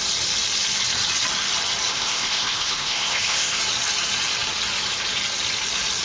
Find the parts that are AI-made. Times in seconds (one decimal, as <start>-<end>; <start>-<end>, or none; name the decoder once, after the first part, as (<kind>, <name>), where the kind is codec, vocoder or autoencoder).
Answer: 1.9-3.6 (codec, ZipCodec)